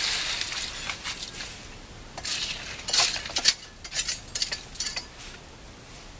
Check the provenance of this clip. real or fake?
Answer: real